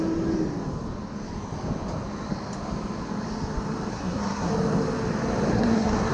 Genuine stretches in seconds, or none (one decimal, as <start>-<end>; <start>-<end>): 0.0-3.9; 4.5-5.5